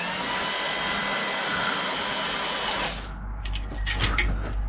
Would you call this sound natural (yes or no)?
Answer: yes